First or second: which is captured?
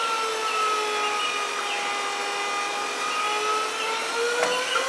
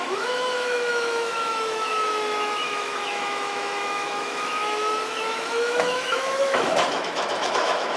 first